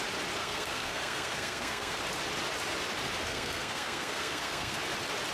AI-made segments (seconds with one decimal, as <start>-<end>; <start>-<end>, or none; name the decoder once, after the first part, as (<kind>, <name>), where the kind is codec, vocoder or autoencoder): 0.4-2.0 (codec, SNAC); 3.3-4.8